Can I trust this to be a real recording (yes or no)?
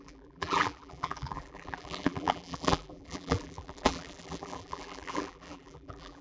no